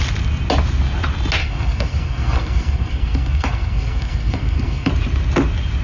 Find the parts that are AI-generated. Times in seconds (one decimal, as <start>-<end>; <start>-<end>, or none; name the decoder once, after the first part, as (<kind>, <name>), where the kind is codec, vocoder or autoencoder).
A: 1.4-4.9 (codec, SNAC)